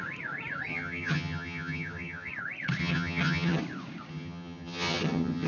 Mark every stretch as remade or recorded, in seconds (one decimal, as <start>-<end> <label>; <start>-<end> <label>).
0.0-0.7 recorded; 0.7-2.3 remade; 2.3-2.8 recorded; 2.8-3.6 remade; 3.6-4.1 recorded; 4.1-5.5 remade